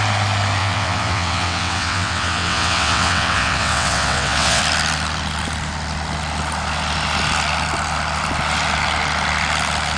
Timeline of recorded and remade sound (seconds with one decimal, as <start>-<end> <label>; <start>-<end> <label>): 0.0-0.6 recorded; 0.6-4.6 remade; 4.6-10.0 recorded